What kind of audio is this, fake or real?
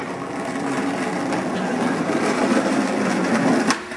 real